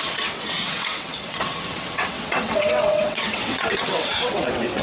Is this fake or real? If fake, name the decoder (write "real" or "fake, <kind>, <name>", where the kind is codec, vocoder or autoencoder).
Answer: fake, vocoder, WaveNeXt